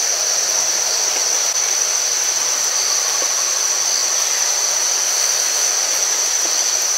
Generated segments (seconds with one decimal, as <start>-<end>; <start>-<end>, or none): none